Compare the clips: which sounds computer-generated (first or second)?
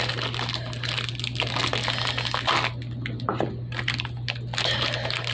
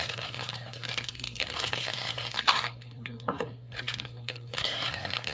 second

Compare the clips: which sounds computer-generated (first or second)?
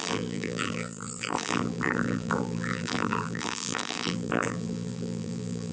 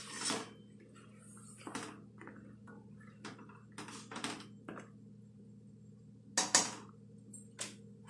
first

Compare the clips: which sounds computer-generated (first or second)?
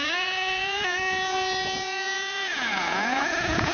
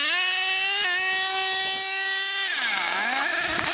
first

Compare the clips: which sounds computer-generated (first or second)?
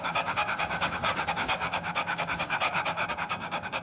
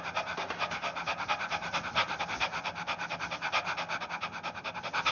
first